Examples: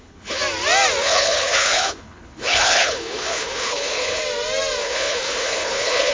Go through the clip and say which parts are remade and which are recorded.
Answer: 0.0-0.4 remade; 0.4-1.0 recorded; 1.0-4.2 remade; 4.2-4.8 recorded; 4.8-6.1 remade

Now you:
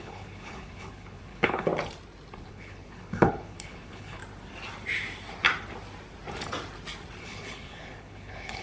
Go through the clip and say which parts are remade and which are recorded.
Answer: 0.0-1.7 remade; 1.7-2.4 recorded; 2.4-4.2 remade; 4.2-7.2 recorded; 7.2-8.6 remade